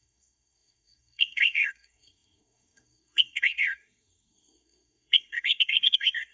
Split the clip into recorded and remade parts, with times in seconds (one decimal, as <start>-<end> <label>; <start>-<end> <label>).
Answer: 0.0-6.3 remade